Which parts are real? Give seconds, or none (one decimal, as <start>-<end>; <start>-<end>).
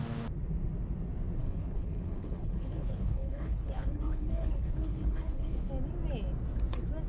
0.0-1.4; 5.7-7.1